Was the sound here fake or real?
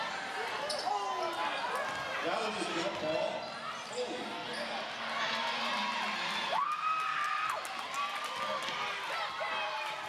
real